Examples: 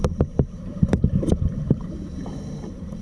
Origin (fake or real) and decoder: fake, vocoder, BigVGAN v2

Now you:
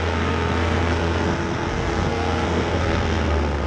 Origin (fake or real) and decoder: fake, codec, SNAC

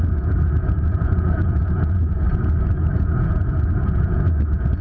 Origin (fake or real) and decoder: fake, vocoder, Vocos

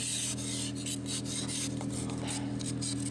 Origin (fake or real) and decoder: real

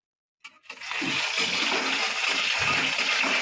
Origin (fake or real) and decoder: real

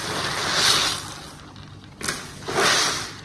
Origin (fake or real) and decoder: real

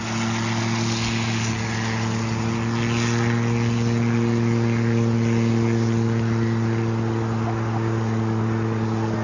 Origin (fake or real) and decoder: real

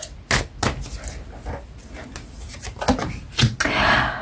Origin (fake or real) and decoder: real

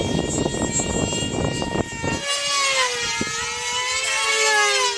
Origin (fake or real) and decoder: real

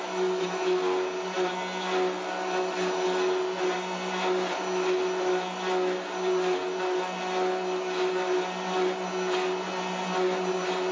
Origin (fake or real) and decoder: real